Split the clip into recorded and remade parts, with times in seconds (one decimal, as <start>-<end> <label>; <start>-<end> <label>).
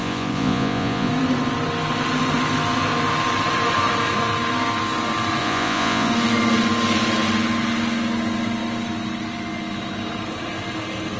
0.0-1.1 remade; 1.1-5.4 recorded; 5.4-6.1 remade; 6.1-11.2 recorded